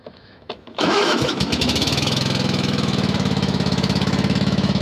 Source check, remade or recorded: remade